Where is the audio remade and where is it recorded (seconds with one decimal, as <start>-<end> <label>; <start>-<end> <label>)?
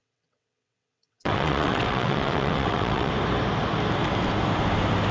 0.0-3.1 remade; 3.1-5.1 recorded